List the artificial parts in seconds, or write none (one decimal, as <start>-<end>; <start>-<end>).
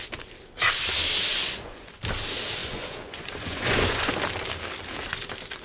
1.3-2.0; 2.6-4.1